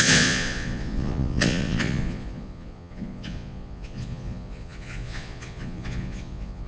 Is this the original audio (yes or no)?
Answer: no